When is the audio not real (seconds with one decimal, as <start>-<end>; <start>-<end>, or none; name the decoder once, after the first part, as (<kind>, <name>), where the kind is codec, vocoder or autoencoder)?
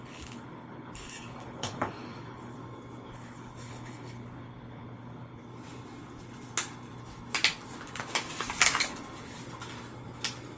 0.0-2.5 (codec, HILCodec); 3.1-5.4